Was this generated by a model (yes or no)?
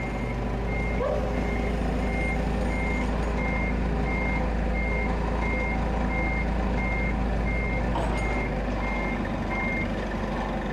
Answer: no